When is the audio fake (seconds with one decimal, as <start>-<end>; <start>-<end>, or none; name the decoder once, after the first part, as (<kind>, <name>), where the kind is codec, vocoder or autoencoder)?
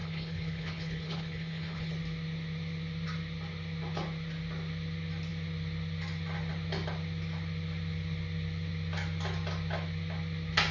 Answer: 0.0-1.9 (codec, HILCodec)